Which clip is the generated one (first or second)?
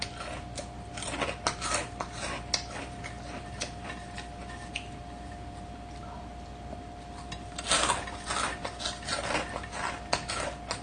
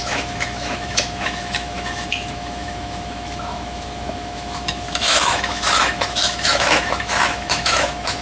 second